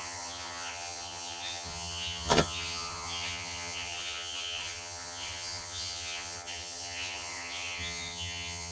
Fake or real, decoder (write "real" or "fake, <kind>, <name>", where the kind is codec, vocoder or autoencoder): fake, vocoder, HiFi-GAN